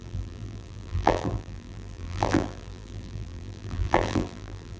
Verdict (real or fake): fake